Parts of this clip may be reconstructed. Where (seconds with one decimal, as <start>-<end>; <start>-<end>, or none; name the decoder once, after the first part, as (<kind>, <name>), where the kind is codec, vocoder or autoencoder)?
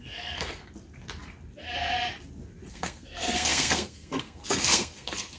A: 0.0-0.6 (codec, SNAC); 2.7-5.4